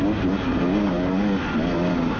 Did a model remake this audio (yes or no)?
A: no